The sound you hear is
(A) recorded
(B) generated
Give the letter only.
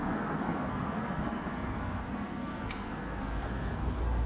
B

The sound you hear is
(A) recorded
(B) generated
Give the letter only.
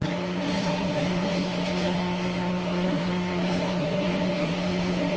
B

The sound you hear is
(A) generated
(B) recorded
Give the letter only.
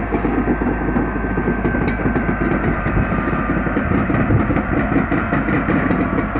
B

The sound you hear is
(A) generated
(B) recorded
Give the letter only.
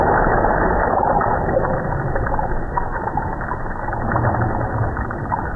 B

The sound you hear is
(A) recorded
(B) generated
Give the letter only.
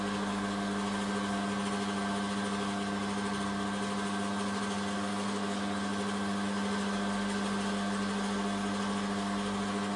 A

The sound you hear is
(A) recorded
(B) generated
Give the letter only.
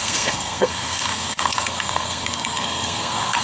B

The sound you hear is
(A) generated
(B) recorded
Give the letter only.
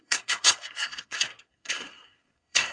A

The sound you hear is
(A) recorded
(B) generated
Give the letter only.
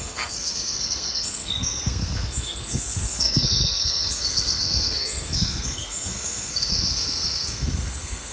B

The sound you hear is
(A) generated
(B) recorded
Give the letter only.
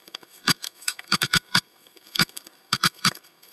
A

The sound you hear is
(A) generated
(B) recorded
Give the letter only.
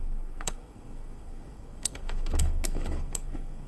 A